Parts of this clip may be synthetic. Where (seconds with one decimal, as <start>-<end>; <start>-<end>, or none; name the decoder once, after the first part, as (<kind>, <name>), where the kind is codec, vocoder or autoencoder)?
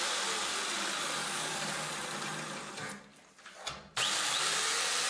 1.2-1.9 (codec, DAC)